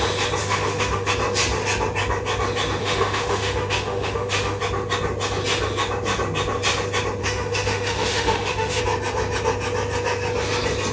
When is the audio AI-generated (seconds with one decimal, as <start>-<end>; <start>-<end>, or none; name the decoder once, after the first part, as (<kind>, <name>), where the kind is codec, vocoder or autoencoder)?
0.4-1.1 (autoencoder, DAC-VAE); 2.8-4.6; 7.2-8.8

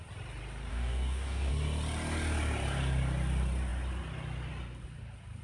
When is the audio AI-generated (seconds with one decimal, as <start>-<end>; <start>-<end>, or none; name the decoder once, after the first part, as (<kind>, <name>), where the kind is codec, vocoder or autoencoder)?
0.7-1.5 (codec, DAC)